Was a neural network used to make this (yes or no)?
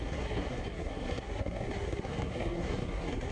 yes